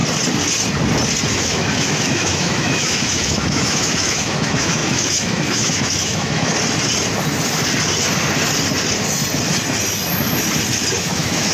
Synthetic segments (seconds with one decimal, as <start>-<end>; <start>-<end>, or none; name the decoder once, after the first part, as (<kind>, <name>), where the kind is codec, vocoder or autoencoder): 1.3-6.5 (autoencoder, DAC-VAE); 11.0-11.5